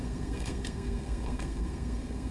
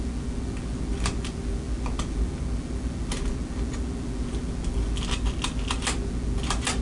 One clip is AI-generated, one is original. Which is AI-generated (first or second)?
first